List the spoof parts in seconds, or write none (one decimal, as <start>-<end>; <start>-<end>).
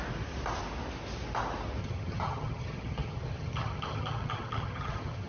1.8-5.3